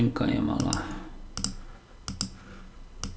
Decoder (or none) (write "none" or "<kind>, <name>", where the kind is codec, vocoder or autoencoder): none